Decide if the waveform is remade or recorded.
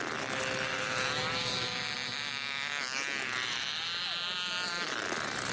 recorded